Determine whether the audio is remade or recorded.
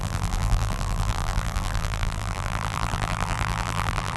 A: remade